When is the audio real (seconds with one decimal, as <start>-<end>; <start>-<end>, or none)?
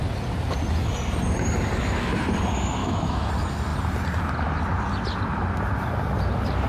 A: 0.0-2.8; 3.3-6.7